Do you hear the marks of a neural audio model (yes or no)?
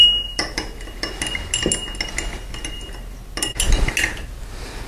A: no